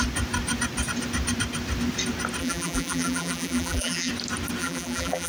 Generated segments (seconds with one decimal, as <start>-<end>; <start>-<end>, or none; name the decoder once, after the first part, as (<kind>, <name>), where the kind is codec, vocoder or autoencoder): 2.4-4.1 (vocoder, BigVGAN v2); 4.6-5.3